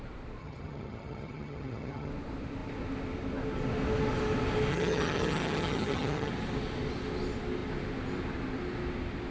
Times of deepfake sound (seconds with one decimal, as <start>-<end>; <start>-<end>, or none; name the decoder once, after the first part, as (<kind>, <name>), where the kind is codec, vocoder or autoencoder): 0.4-2.1 (vocoder, HiFi-GAN); 4.7-6.3